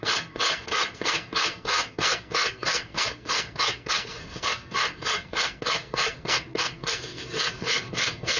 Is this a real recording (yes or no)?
no